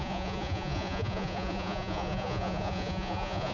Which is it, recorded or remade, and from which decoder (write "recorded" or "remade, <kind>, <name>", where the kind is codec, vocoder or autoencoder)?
remade, vocoder, Vocos